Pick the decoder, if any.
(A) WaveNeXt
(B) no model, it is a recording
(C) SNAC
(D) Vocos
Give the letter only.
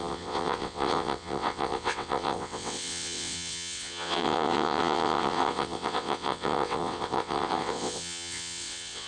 A